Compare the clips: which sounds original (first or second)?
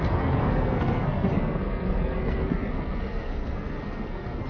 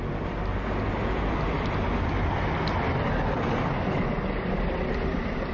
second